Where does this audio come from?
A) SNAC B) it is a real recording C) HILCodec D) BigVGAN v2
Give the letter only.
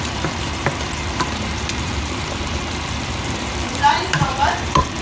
D